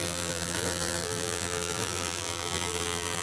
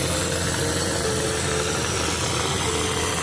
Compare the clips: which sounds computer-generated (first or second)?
first